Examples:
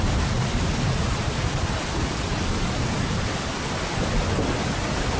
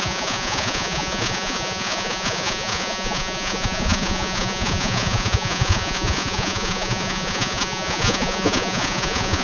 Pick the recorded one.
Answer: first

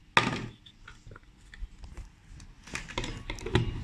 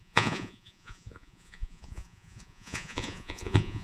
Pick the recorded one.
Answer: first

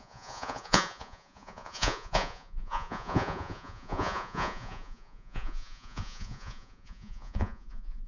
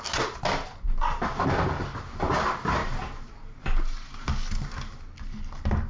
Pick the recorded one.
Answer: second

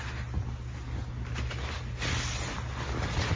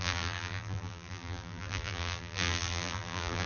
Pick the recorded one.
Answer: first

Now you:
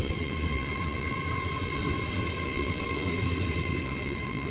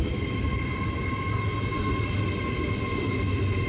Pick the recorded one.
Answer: second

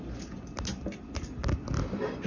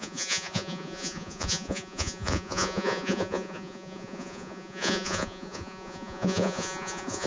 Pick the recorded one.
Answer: first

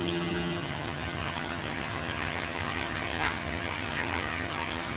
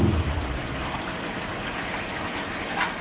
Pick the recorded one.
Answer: second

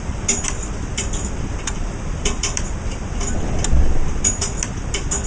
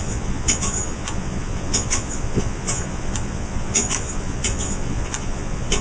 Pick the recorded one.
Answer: first